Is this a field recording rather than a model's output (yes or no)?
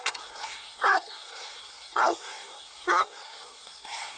no